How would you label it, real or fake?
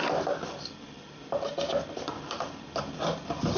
real